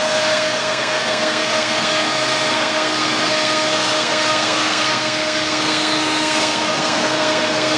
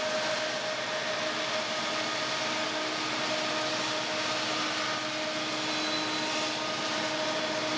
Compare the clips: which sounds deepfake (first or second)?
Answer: first